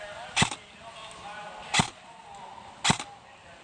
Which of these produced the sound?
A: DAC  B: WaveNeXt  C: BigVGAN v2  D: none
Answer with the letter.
D